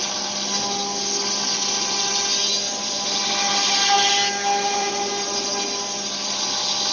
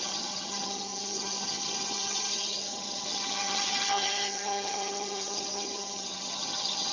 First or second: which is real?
first